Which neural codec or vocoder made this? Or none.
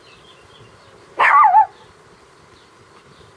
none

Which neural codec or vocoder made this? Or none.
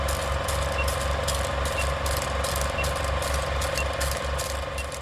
none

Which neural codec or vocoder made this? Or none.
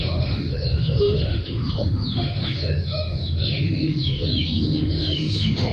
autoencoder, DAC-VAE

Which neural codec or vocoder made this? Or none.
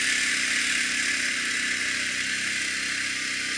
none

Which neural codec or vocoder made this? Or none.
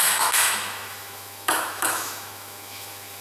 autoencoder, DAC-VAE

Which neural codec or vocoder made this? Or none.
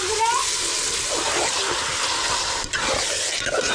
none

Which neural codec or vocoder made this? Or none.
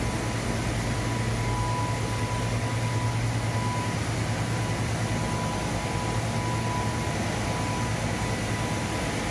none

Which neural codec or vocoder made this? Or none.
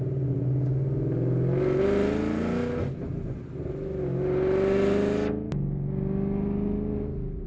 none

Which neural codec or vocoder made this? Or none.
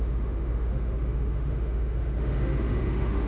autoencoder, DAC-VAE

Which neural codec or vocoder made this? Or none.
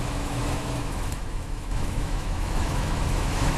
autoencoder, DAC-VAE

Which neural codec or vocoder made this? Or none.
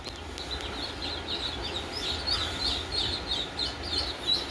none